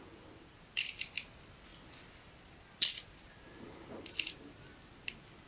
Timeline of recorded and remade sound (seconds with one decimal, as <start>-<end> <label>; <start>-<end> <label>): 0.0-5.5 recorded